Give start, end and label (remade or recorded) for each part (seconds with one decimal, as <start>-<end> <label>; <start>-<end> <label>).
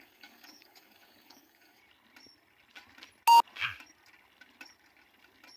0.0-1.8 remade; 1.8-5.6 recorded